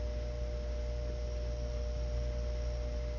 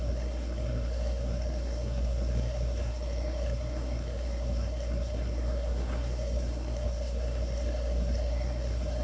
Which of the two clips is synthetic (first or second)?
second